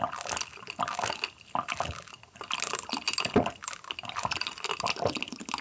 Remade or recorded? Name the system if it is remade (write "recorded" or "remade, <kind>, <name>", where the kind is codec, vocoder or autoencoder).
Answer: recorded